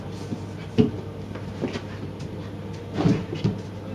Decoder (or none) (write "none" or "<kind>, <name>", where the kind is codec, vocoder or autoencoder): none